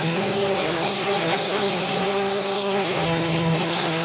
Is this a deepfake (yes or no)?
yes